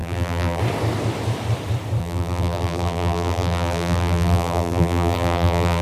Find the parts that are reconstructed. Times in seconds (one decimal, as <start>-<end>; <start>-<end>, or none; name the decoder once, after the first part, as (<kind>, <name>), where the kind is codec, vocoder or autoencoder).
0.0-0.6 (vocoder, BigVGAN v2); 2.0-5.8